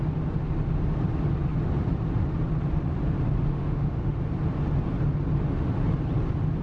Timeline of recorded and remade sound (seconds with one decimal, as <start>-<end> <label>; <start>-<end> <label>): 0.0-3.5 recorded; 3.5-4.2 remade; 4.2-6.6 recorded